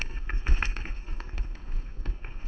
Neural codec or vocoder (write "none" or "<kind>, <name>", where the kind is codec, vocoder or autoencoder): codec, SNAC